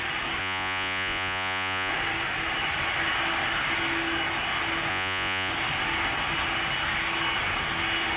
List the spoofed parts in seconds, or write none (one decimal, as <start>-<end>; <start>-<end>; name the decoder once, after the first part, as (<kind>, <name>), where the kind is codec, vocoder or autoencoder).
0.4-1.9 (vocoder, Vocos); 4.9-5.5